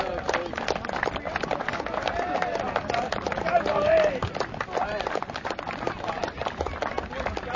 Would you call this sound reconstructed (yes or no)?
no